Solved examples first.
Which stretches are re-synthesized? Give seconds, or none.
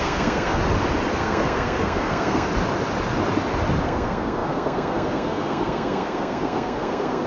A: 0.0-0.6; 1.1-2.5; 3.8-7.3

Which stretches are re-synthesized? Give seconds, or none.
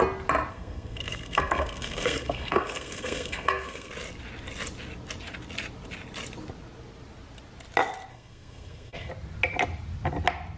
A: 0.5-3.9; 8.1-9.1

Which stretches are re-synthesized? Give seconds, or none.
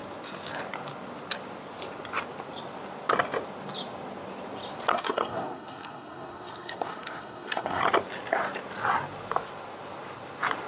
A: 4.9-7.8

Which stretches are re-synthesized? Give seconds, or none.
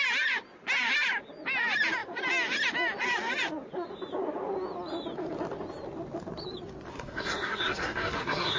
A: 6.9-8.6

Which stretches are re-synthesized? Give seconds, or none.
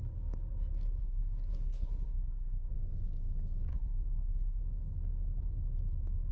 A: 1.0-2.7; 3.7-4.6